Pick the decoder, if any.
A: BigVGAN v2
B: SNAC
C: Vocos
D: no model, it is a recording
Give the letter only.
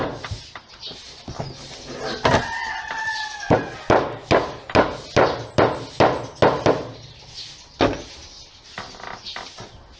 D